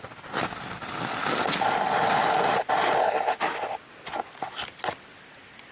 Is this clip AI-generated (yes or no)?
no